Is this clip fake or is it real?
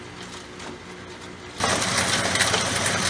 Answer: real